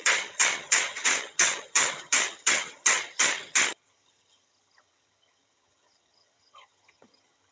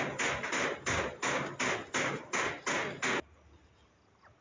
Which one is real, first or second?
second